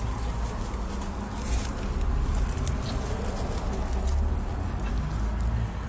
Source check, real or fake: real